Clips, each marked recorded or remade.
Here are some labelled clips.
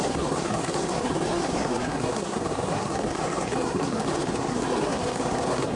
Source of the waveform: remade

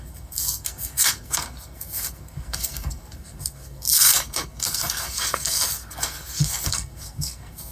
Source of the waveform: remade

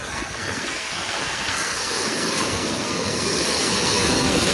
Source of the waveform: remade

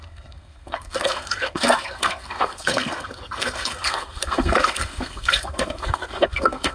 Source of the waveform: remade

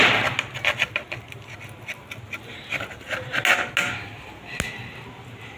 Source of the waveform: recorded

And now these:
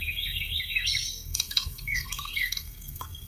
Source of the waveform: remade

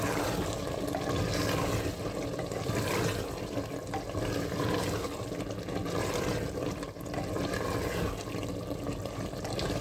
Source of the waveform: recorded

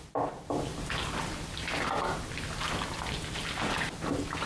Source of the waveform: recorded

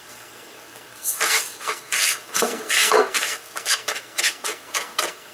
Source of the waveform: remade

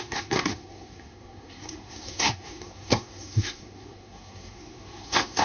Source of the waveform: remade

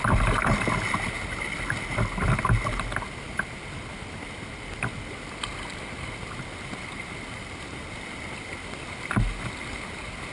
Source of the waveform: recorded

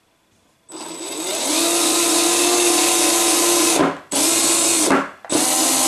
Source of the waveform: recorded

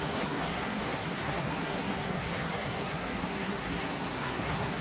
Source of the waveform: remade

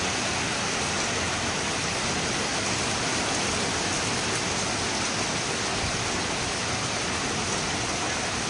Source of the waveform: recorded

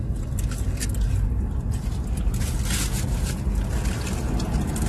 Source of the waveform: recorded